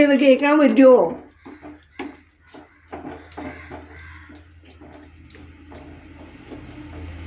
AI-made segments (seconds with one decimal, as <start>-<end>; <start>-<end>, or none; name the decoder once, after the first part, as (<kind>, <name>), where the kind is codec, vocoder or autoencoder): none